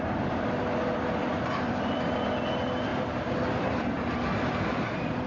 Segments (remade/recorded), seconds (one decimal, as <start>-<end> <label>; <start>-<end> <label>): 0.0-1.3 recorded; 1.3-2.3 remade; 2.3-2.9 recorded; 2.9-3.9 remade; 3.9-5.3 recorded